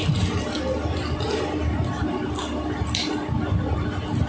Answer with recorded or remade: recorded